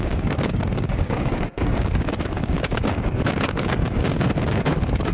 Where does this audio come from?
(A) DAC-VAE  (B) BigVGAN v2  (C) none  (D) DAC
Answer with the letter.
D